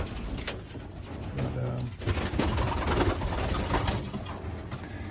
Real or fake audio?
real